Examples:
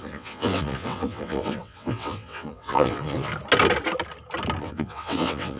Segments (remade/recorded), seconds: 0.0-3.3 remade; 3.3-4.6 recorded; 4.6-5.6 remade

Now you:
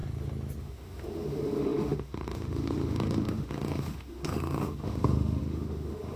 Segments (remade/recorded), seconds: 0.0-0.6 recorded; 0.6-6.2 remade

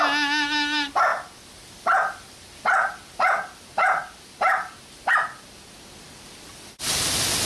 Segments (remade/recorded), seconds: 0.0-7.5 recorded

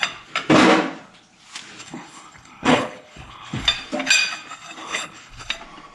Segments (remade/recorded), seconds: 0.0-1.8 recorded; 1.8-3.6 remade; 3.6-4.8 recorded; 4.8-5.5 remade; 5.5-5.9 recorded